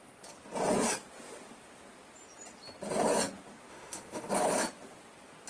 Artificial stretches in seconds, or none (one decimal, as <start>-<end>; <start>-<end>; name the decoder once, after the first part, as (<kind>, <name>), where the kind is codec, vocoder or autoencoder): 3.7-4.3 (autoencoder, DAC-VAE)